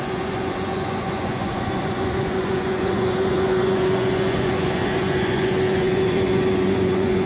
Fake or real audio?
fake